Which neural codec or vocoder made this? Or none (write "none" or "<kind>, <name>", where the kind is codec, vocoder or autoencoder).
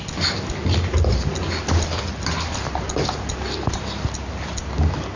none